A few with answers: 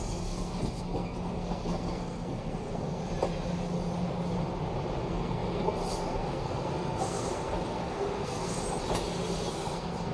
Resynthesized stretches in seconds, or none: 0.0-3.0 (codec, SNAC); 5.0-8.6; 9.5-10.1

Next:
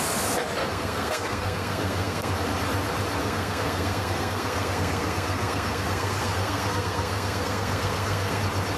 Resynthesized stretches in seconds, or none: 0.6-2.3 (codec, SNAC); 3.2-8.4

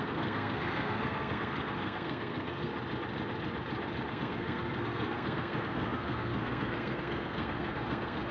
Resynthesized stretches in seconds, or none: 0.0-2.7 (codec, SNAC); 4.1-8.3

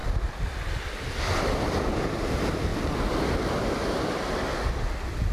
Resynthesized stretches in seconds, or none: none

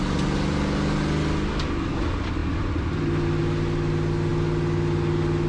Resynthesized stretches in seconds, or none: none